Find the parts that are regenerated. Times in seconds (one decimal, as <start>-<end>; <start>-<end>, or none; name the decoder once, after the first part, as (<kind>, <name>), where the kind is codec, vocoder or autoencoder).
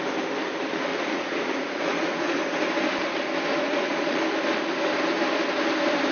0.9-2.4 (vocoder, Vocos); 3.5-4.2